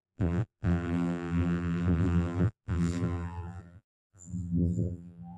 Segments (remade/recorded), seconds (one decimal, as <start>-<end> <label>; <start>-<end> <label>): 0.0-5.4 remade